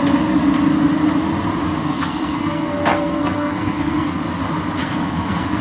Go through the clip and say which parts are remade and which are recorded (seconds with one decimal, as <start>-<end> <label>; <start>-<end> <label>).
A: 0.0-1.8 recorded; 1.8-4.2 remade; 4.2-4.8 recorded; 4.8-5.6 remade